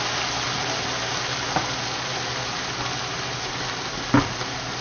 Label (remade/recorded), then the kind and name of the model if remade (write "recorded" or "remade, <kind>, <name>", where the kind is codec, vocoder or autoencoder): recorded